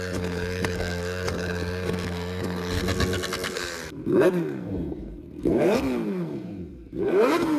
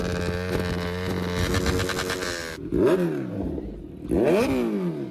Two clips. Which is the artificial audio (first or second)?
first